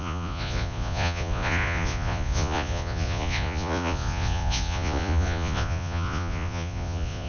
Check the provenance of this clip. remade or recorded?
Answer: remade